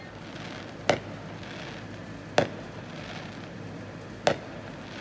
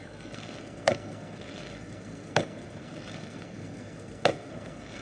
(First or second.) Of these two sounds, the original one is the first